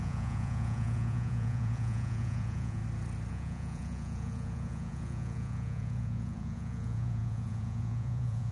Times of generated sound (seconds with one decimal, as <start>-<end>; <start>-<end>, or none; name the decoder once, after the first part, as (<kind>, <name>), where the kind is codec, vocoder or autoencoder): 0.0-2.8 (vocoder, Vocos); 3.3-8.5

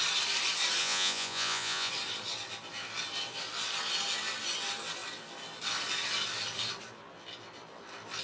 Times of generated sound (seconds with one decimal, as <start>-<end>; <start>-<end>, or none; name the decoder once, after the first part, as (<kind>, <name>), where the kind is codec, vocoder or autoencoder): 0.8-1.9 (vocoder, Vocos)

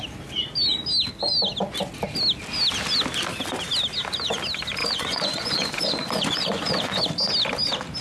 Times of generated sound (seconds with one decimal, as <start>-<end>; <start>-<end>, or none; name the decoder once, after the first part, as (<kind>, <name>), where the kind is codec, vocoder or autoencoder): 4.8-7.0 (vocoder, Vocos)

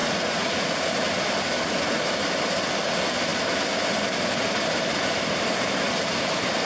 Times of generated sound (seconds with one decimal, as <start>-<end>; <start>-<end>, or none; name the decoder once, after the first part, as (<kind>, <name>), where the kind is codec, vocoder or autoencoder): 0.0-0.9 (vocoder, Vocos)

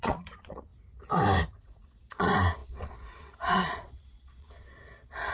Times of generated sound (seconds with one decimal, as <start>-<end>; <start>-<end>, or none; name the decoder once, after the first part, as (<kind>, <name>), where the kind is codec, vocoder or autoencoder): 0.0-0.7 (vocoder, Vocos); 1.6-5.3

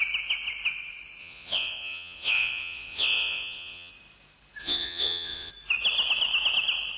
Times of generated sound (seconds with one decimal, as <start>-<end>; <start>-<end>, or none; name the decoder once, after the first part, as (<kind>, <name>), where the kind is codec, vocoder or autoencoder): 1.2-3.9 (vocoder, Vocos); 4.6-5.5